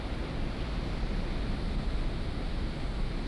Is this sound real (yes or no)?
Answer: yes